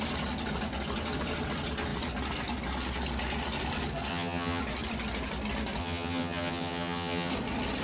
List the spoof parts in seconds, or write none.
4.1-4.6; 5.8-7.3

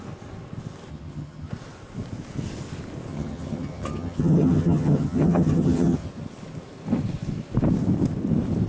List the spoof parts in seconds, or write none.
0.9-1.5; 3.1-6.1

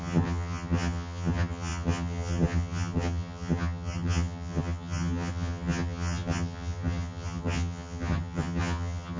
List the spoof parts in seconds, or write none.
0.0-9.2

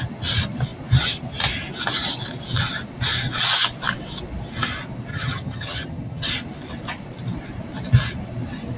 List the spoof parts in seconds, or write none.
5.1-6.3

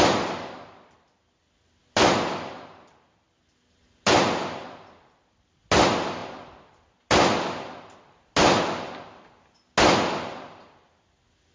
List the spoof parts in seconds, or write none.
none

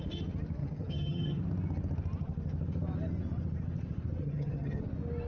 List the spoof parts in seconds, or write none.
0.6-1.4; 4.2-4.8